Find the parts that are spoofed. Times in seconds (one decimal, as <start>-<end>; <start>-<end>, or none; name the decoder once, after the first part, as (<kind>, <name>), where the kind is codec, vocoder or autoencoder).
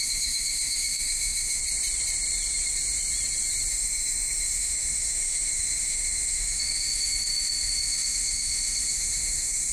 0.0-1.6 (autoencoder, DAC-VAE); 3.7-9.7